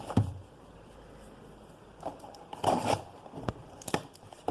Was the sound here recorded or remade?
remade